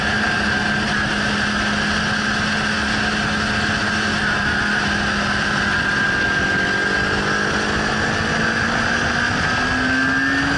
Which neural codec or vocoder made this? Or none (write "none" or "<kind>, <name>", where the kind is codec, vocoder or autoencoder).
none